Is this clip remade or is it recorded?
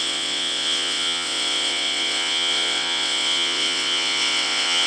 remade